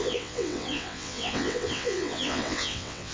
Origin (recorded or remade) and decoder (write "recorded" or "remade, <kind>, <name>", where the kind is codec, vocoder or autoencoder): remade, vocoder, WaveNeXt